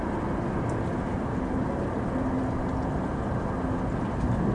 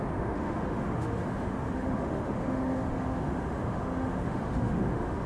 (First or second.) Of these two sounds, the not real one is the second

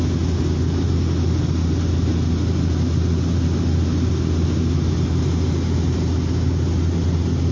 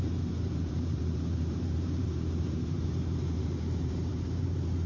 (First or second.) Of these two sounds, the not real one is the second